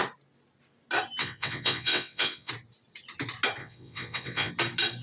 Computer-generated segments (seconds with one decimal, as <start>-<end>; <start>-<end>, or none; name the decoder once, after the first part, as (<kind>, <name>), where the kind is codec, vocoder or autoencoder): 1.2-2.5 (vocoder, WaveNeXt); 3.6-4.5